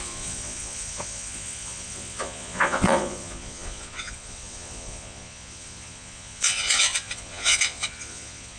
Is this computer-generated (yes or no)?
yes